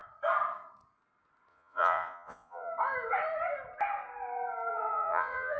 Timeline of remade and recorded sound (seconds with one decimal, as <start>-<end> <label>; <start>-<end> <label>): 0.0-1.5 recorded; 1.5-2.7 remade; 2.7-4.7 recorded; 4.7-5.6 remade